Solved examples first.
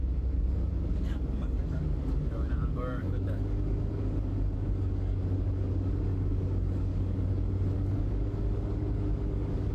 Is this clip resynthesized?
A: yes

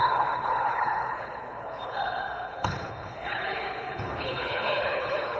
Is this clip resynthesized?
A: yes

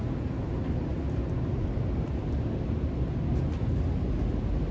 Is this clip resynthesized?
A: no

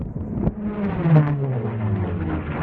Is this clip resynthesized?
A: no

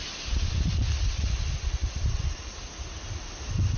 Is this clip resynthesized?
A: no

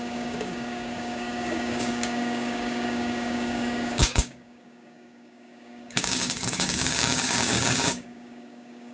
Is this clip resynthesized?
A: yes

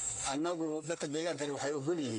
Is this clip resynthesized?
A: yes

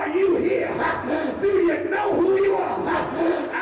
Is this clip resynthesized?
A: yes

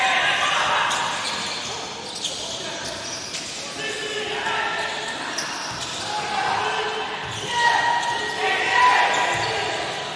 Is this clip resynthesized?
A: no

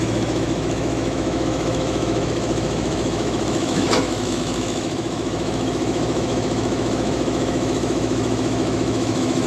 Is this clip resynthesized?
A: yes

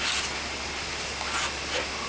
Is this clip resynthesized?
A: no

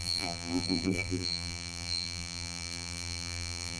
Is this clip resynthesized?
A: yes